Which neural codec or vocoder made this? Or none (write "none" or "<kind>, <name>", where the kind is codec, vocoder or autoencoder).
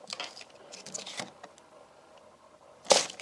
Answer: none